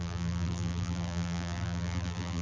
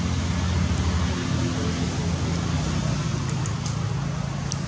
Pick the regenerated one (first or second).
first